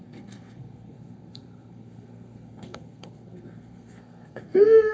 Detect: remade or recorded remade